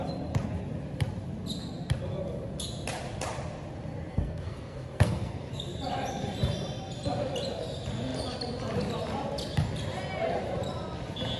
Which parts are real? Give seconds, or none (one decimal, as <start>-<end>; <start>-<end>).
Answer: 0.0-4.1; 5.5-11.4